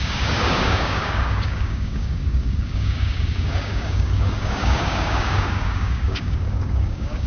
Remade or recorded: remade